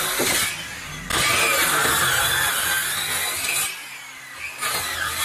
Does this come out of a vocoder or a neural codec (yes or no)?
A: no